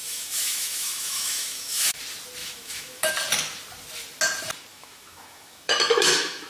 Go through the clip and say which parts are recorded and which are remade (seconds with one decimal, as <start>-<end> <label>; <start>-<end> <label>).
0.0-2.0 remade; 2.0-2.4 recorded; 2.4-3.1 remade; 3.1-4.7 recorded; 4.7-6.5 remade